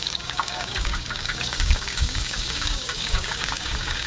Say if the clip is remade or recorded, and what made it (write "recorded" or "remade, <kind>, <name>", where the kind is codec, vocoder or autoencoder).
remade, codec, DAC